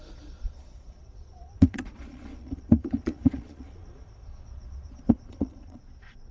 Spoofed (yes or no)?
yes